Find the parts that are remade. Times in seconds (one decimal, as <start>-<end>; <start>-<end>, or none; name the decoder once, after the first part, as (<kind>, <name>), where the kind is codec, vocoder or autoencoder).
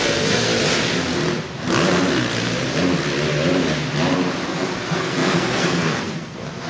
0.0-0.5 (codec, SNAC); 4.5-6.7